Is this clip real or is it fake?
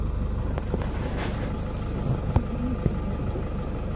real